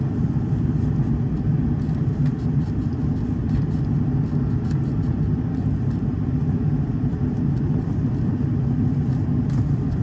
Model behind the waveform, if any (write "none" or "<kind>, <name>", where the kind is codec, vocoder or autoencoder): vocoder, BigVGAN v2